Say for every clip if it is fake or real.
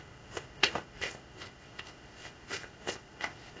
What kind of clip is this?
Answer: fake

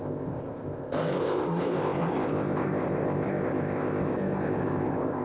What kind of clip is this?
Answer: fake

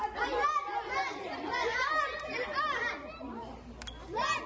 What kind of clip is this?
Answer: real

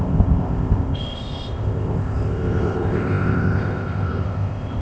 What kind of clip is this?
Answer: fake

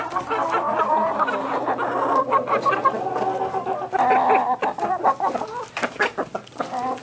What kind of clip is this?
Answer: real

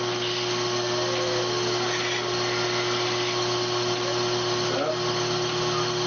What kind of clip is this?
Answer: real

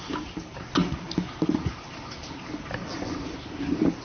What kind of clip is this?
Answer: real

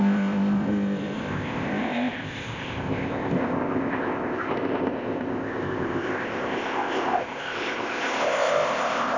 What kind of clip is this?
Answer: fake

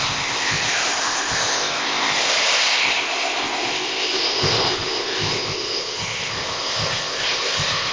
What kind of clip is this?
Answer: fake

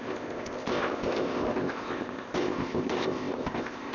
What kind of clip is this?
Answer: fake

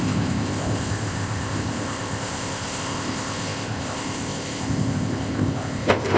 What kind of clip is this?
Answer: fake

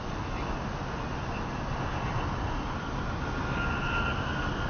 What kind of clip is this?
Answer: real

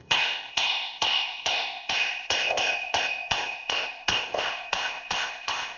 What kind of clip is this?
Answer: fake